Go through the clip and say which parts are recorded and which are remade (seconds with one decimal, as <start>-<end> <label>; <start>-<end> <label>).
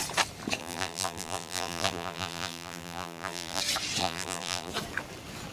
0.0-0.6 recorded; 0.6-3.6 remade; 3.6-4.0 recorded; 4.0-4.7 remade; 4.7-5.5 recorded